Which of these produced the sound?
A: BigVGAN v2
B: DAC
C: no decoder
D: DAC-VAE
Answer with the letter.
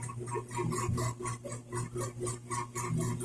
C